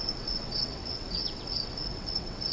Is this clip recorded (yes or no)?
no